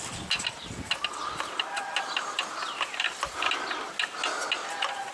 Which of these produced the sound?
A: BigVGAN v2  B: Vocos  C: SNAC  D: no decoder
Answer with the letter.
D